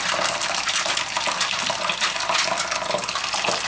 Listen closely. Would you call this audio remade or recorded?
recorded